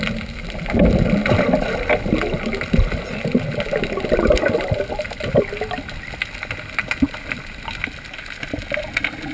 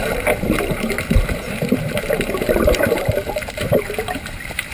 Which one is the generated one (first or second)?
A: second